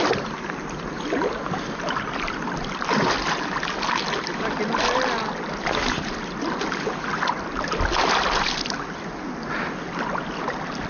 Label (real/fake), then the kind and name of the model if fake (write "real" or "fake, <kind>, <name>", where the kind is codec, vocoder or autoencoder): real